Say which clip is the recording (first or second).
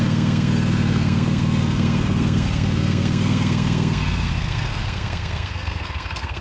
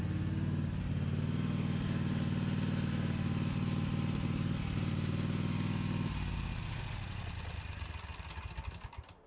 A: second